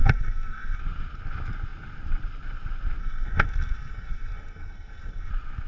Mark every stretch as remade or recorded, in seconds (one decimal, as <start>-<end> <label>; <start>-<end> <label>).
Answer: 0.0-0.8 remade; 0.8-3.0 recorded; 3.0-5.3 remade; 5.3-5.7 recorded